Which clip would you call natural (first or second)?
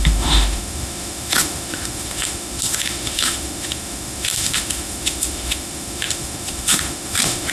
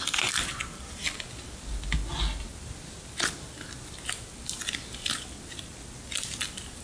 second